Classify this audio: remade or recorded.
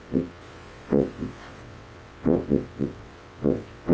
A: remade